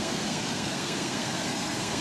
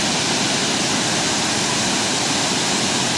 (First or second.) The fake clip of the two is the first